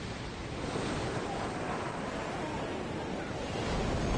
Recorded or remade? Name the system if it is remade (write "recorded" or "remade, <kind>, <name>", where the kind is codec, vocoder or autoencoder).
recorded